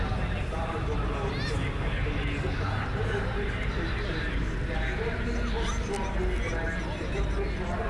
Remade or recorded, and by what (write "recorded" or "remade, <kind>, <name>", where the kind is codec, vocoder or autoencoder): recorded